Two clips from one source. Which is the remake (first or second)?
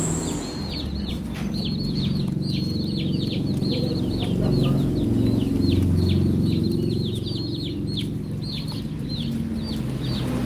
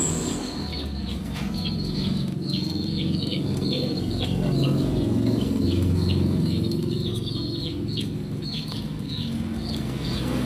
second